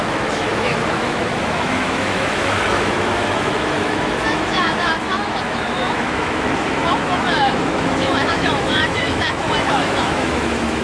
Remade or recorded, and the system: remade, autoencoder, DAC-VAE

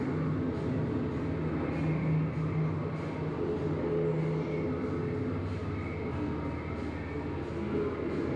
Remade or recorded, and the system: recorded